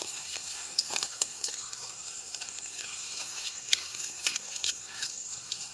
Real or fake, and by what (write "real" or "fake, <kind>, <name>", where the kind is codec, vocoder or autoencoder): fake, codec, SNAC